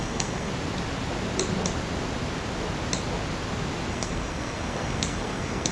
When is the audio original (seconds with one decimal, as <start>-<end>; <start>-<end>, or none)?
0.5-3.9